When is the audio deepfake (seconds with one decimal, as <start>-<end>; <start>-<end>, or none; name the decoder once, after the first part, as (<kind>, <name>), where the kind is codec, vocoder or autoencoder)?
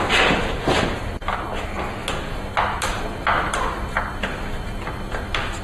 none